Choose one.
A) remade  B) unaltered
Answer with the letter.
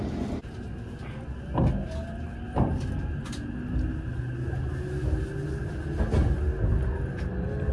B